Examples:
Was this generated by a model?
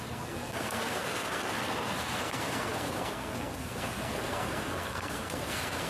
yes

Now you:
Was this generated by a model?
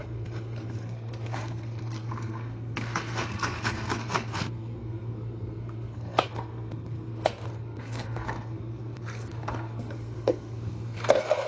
yes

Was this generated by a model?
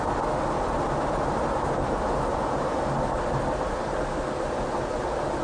no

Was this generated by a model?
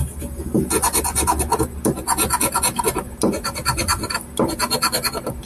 no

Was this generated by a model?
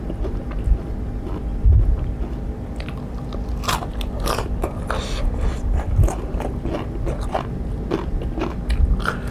no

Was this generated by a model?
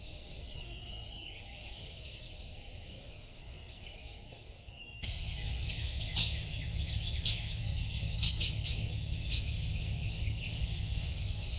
yes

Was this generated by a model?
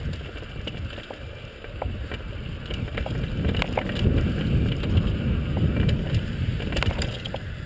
no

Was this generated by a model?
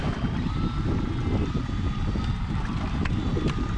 no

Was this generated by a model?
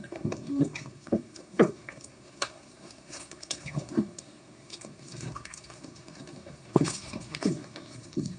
yes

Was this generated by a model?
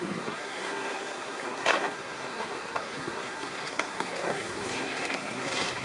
yes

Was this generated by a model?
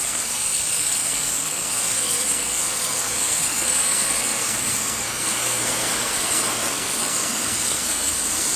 yes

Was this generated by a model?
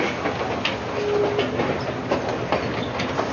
no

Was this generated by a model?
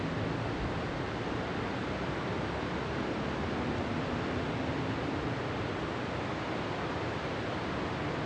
no